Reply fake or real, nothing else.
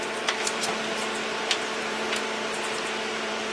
fake